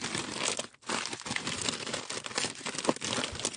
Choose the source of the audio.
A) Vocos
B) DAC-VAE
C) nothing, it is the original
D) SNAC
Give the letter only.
C